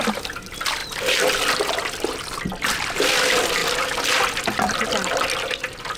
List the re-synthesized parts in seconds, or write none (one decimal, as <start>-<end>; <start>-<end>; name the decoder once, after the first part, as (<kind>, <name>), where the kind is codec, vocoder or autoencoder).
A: none